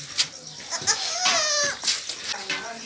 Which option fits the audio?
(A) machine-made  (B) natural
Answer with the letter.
B